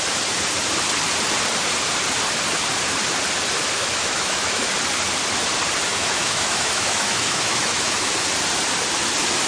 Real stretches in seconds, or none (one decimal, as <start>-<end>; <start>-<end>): 0.0-3.8; 4.7-5.9; 8.1-9.5